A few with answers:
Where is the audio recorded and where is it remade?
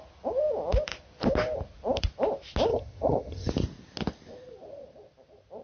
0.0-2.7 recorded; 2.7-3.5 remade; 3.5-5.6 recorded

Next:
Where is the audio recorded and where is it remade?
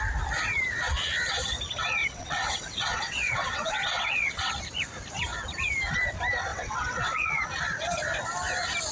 0.0-2.0 recorded; 2.0-4.5 remade; 4.5-6.5 recorded; 6.5-7.4 remade; 7.4-8.9 recorded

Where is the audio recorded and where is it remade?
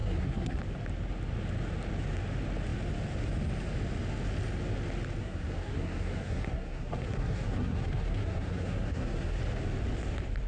0.0-0.6 remade; 0.6-5.2 recorded; 5.2-9.4 remade; 9.4-10.5 recorded